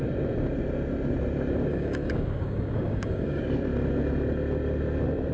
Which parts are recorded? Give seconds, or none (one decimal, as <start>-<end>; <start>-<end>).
0.0-1.7; 3.4-5.3